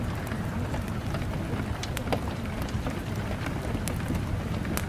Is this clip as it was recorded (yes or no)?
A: yes